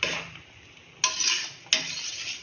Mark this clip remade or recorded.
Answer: recorded